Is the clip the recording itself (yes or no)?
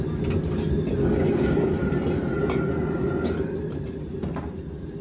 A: yes